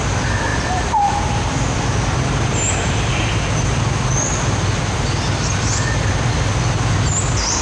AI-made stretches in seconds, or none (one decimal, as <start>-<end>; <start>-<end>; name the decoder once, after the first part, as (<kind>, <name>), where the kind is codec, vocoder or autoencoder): 0.5-1.2 (vocoder, BigVGAN v2)